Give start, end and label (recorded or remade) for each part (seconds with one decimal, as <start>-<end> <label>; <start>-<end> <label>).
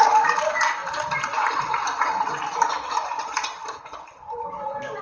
0.0-5.0 recorded